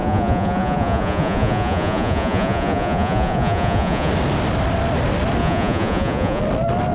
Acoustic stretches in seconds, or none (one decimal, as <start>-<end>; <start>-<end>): 4.1-5.4; 6.4-6.9